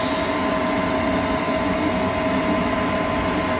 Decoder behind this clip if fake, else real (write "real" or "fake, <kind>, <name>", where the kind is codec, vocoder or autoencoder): real